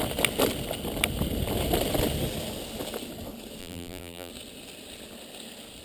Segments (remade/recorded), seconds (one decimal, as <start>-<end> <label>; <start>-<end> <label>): 0.0-3.6 recorded; 3.6-4.3 remade; 4.3-5.8 recorded